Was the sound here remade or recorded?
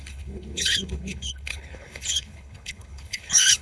remade